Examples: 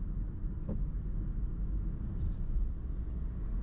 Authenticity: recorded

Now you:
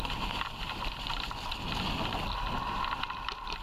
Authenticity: recorded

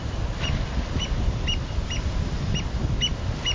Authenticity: recorded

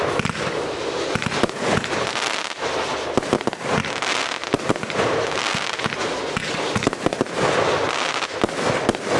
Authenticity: recorded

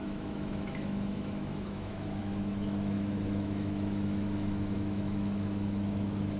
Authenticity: remade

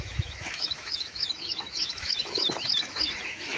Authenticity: remade